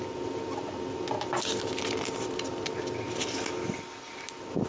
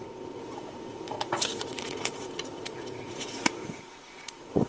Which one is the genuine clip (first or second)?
first